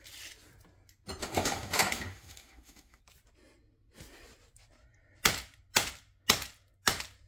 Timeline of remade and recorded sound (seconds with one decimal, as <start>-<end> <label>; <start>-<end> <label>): 0.0-1.2 recorded; 1.2-3.0 remade; 3.0-7.3 recorded